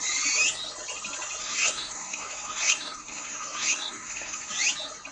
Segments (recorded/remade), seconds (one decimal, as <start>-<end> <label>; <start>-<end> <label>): 0.0-1.4 recorded; 1.4-4.5 remade; 4.5-5.1 recorded